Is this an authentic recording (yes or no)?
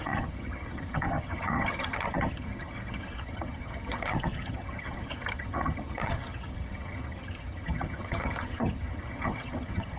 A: no